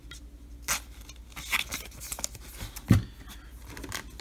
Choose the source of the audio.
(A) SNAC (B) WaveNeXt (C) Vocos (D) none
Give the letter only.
D